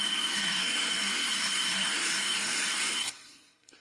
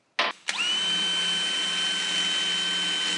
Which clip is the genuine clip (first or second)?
second